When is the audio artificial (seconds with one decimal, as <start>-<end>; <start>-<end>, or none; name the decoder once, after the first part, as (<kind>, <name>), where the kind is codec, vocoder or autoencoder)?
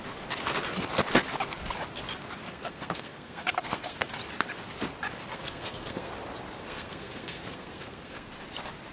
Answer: 2.5-4.1 (codec, SNAC); 5.3-6.1; 6.6-8.3